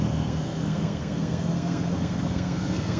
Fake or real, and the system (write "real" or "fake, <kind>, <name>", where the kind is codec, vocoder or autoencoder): fake, codec, SNAC